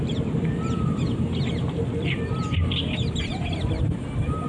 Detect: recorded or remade remade